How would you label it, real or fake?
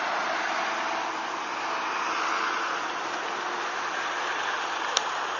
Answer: real